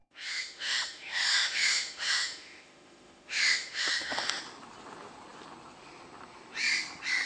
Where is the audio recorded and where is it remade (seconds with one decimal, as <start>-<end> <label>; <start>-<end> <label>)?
0.0-4.4 remade; 4.4-7.3 recorded